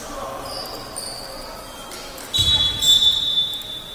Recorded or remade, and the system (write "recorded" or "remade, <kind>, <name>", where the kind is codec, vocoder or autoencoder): recorded